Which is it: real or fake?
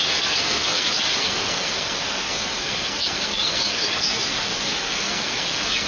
fake